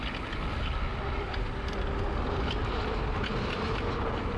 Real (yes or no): yes